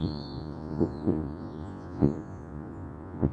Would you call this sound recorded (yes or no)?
no